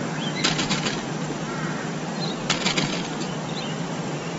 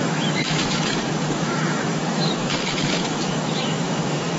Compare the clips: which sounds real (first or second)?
first